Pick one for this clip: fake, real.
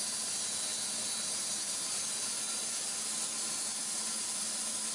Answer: real